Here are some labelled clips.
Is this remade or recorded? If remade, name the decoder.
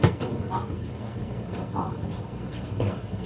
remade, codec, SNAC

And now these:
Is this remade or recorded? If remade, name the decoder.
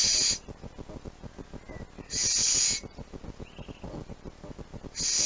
recorded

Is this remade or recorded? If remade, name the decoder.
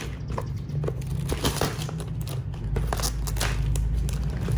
recorded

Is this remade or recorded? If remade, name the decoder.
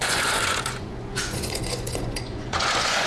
remade, vocoder, Vocos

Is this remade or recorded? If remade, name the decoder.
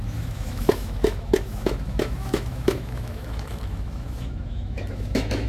remade, autoencoder, DAC-VAE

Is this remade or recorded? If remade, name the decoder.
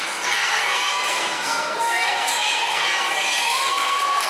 remade, codec, SNAC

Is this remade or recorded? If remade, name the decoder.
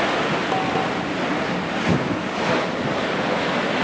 recorded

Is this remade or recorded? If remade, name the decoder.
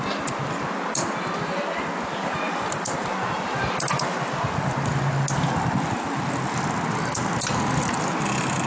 recorded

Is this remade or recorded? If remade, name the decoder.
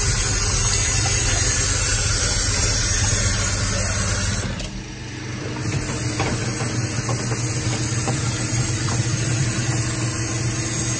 recorded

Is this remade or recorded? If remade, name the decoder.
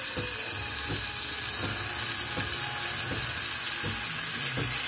recorded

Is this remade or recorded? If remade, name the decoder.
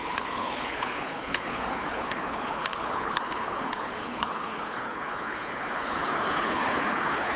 remade, codec, HILCodec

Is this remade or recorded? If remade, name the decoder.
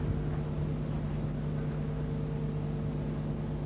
recorded